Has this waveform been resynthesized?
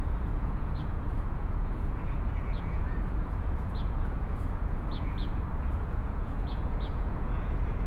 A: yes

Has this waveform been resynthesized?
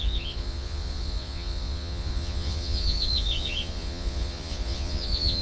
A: yes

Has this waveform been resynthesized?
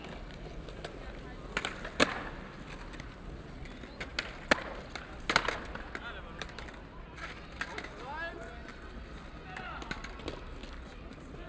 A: no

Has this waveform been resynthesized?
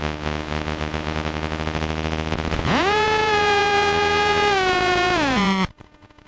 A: yes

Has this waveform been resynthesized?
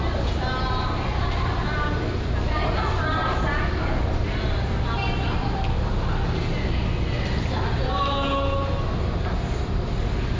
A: no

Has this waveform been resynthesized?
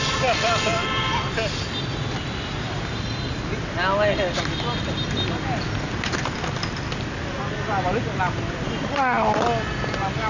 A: no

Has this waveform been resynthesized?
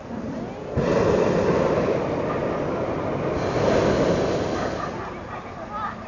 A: no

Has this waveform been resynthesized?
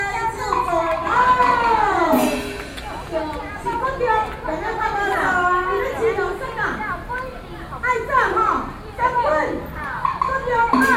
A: no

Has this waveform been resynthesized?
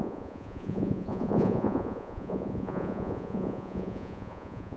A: yes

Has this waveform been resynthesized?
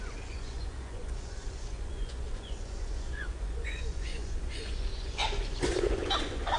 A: yes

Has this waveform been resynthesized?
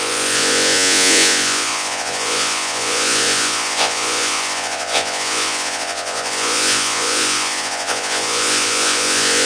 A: yes